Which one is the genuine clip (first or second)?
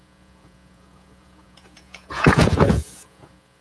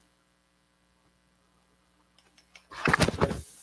second